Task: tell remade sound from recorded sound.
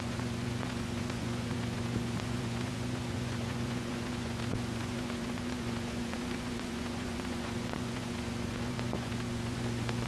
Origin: remade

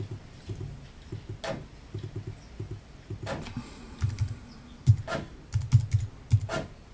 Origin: recorded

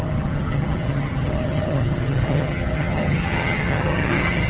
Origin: remade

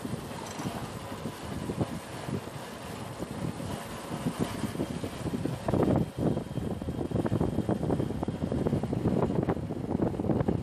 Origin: recorded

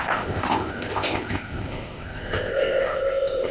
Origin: remade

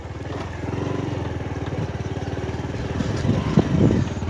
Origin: recorded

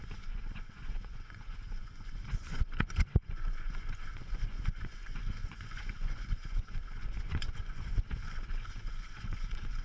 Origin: remade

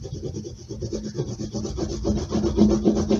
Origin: recorded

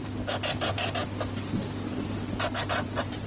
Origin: recorded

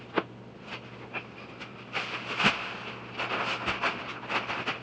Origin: recorded